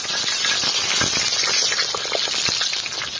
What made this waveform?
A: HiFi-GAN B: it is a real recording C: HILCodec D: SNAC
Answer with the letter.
B